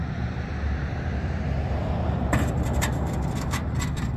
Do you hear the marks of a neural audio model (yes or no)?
yes